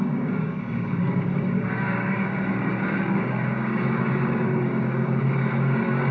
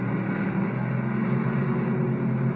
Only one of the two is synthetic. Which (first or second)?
first